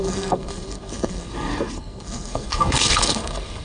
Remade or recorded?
remade